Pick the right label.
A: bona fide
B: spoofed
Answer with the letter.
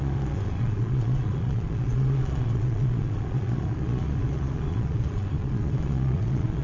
B